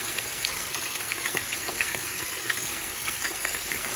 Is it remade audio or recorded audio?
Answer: remade